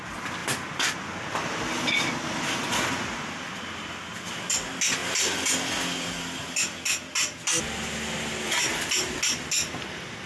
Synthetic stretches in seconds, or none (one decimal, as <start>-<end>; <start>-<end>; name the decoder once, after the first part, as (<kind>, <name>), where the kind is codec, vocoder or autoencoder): none